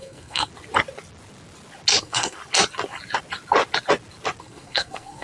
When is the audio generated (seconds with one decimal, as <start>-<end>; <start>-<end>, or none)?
0.0-0.5; 2.0-2.4; 4.4-5.2